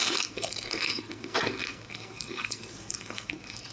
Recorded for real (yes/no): no